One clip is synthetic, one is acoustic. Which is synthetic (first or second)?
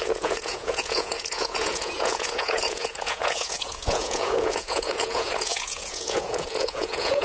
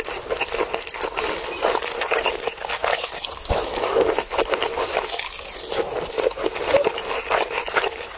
first